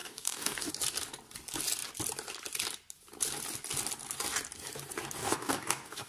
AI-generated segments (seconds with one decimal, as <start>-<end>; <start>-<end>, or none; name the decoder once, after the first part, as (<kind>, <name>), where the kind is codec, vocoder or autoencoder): 0.0-0.7 (codec, DAC); 5.2-6.1